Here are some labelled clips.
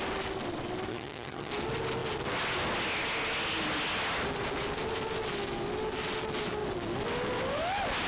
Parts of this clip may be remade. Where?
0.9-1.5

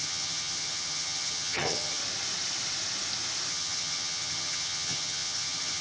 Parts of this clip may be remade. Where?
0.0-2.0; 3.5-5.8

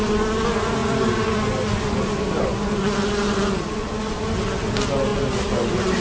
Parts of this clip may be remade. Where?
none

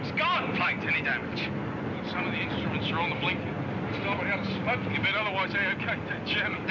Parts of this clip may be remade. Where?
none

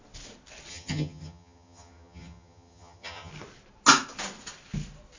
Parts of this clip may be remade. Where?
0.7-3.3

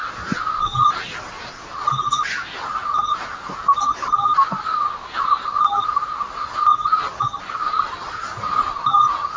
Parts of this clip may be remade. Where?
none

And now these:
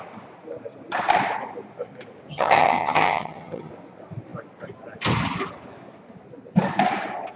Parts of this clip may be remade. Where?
2.3-3.7

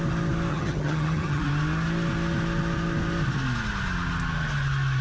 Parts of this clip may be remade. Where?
0.5-1.4